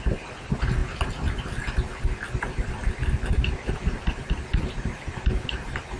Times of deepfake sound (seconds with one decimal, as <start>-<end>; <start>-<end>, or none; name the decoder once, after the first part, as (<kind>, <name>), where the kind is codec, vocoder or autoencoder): none